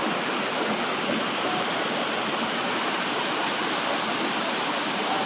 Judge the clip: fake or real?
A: real